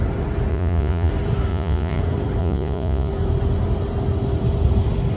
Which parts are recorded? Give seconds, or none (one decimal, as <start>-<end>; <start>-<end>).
0.0-0.5; 1.1-1.5; 2.0-2.4; 3.1-5.2